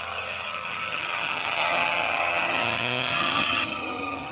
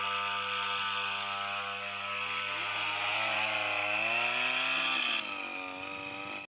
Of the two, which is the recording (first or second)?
second